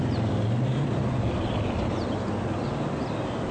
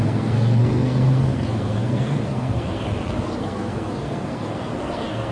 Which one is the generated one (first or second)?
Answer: second